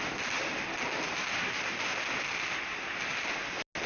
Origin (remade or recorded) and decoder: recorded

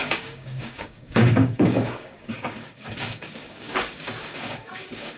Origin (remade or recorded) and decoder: remade, codec, DAC